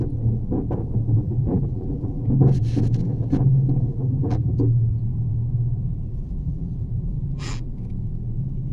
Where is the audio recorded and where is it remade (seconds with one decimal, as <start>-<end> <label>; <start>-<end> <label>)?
0.0-1.2 recorded; 1.2-2.3 remade; 2.3-3.9 recorded; 3.9-7.8 remade; 7.8-8.7 recorded